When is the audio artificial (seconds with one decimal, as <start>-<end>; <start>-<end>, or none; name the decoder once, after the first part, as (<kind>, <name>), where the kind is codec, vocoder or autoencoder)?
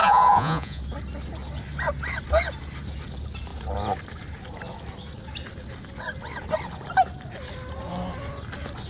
0.0-0.8 (vocoder, Vocos)